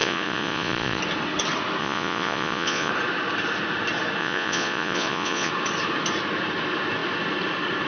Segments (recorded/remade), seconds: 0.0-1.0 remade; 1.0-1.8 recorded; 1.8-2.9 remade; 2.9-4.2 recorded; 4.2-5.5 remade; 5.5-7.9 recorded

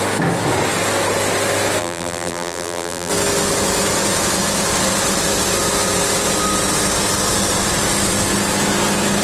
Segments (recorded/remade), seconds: 0.0-1.8 recorded; 1.8-3.1 remade; 3.1-9.2 recorded

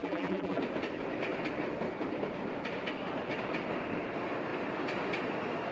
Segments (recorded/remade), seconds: 0.0-0.6 remade; 0.6-5.7 recorded

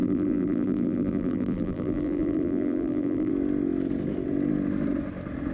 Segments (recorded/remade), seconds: 0.0-3.3 remade; 3.3-5.5 recorded

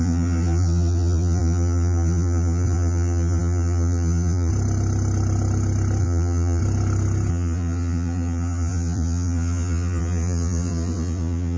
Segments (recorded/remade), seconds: 0.0-4.5 remade; 4.5-6.0 recorded; 6.0-6.6 remade; 6.6-7.3 recorded; 7.3-11.6 remade

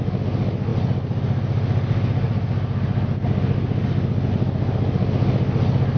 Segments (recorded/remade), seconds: 0.0-6.0 recorded

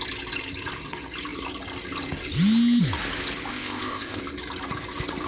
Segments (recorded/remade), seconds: 0.0-3.5 recorded; 3.5-4.2 remade; 4.2-5.3 recorded

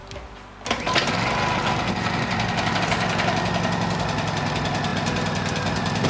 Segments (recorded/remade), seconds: 0.0-6.1 recorded